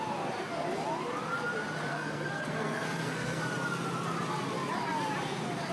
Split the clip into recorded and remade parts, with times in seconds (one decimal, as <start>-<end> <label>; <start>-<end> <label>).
0.0-1.9 recorded; 1.9-3.4 remade; 3.4-5.7 recorded